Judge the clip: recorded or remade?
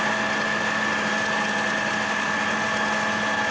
recorded